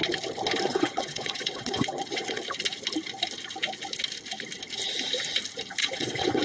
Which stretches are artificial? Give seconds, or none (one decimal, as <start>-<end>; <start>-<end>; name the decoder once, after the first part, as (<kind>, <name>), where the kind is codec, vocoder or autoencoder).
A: 0.7-2.4 (vocoder, WaveNeXt); 5.8-6.4